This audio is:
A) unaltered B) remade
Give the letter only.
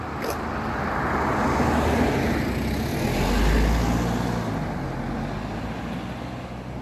A